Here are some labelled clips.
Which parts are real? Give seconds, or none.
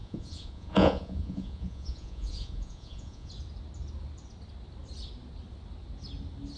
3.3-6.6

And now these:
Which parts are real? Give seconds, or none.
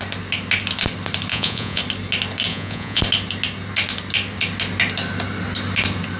0.0-1.3; 1.8-2.5; 3.0-6.2